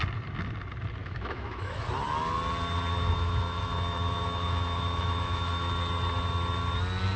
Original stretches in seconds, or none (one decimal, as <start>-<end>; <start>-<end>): 0.0-1.0; 1.9-2.9; 5.7-7.2